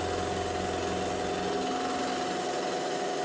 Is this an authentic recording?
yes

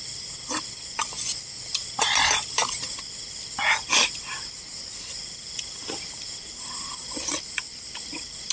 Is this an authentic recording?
no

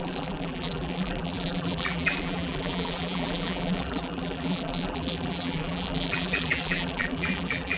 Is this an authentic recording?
no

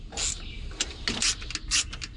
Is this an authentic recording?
yes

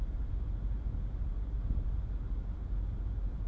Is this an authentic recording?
no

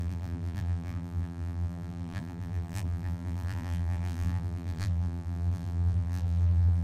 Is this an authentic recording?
no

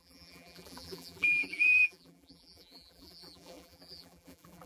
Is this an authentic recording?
no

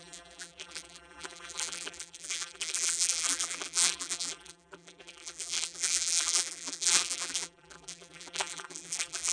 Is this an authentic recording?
no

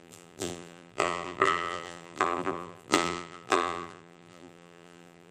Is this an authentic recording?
no